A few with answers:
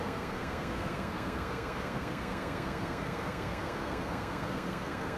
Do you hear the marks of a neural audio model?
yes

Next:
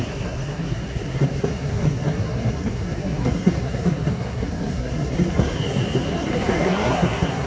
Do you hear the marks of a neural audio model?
yes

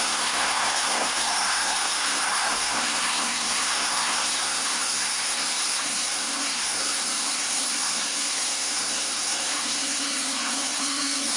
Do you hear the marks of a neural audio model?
yes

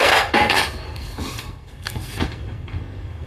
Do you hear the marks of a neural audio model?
yes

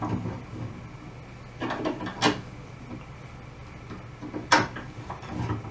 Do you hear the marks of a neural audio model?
no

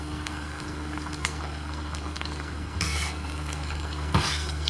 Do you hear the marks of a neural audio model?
yes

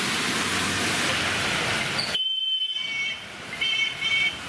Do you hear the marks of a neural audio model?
no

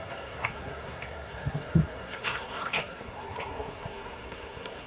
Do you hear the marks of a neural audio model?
yes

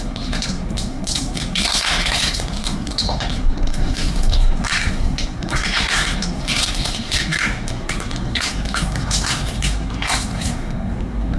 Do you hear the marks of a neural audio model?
yes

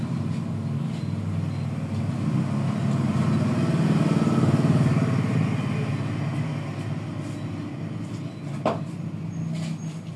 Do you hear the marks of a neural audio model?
no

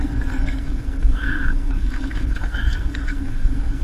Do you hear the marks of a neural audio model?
yes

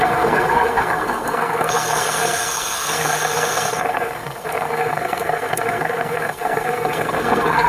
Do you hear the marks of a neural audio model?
yes